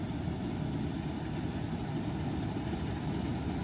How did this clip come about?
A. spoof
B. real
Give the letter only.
B